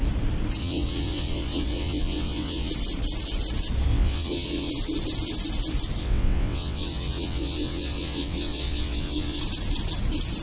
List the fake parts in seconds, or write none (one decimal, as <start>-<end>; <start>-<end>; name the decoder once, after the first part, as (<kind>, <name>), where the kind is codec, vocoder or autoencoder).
0.6-2.7 (vocoder, WaveNeXt); 3.9-4.7; 6.0-9.4